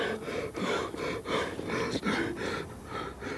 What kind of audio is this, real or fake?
real